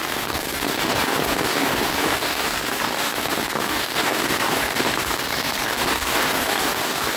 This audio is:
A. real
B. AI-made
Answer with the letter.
B